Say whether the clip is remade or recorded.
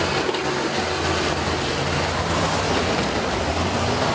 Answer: recorded